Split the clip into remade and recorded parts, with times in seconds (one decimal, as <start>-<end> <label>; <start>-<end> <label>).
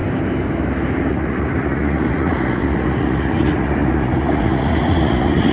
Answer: 0.0-1.0 recorded; 1.0-5.5 remade